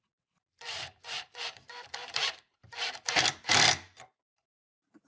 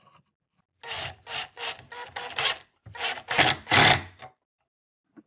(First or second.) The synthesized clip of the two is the first